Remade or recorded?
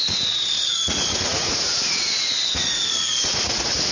remade